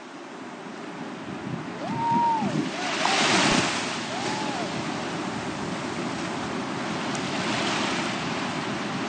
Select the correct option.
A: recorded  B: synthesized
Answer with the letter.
A